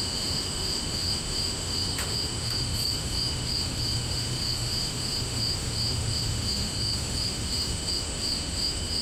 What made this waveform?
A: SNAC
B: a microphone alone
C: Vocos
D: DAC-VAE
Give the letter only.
D